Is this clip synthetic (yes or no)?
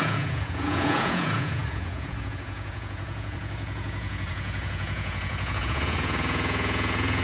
yes